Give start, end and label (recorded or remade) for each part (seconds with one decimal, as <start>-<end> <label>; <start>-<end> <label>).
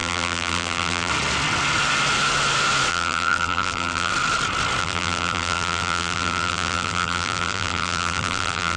0.0-1.1 remade; 1.1-2.9 recorded; 2.9-4.1 remade; 4.1-4.8 recorded; 4.8-8.8 remade